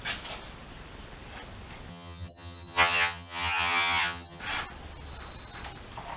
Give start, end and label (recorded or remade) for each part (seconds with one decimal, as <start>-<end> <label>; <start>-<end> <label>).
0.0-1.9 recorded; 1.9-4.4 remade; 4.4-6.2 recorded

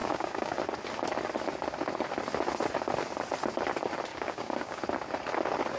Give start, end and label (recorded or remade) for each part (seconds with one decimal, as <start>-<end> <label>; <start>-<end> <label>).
0.0-0.6 remade; 0.6-4.1 recorded; 4.1-4.8 remade; 4.8-5.8 recorded

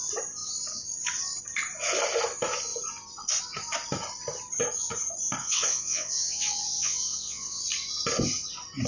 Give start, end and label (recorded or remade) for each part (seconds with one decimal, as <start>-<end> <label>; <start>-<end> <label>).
0.0-5.4 recorded; 5.4-7.6 remade; 7.6-8.9 recorded

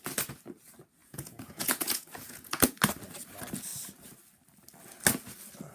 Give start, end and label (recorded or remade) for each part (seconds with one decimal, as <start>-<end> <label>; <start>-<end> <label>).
0.0-1.0 recorded; 1.0-2.8 remade; 2.8-5.7 recorded